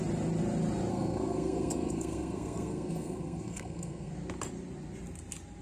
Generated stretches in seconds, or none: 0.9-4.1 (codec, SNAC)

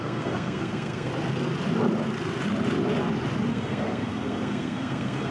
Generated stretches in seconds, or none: 0.0-1.1 (codec, SNAC); 3.5-5.3

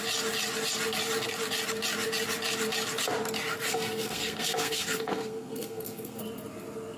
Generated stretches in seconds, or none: 3.7-6.2 (codec, SNAC)

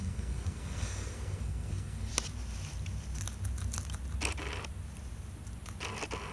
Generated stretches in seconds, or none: 0.0-2.1 (codec, SNAC)